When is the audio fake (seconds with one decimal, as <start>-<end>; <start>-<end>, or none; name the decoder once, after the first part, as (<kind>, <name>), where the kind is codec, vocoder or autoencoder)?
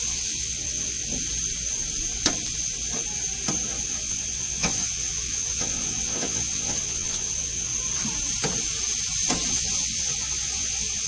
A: 0.0-1.1 (vocoder, WaveNeXt); 3.8-7.7; 9.5-11.1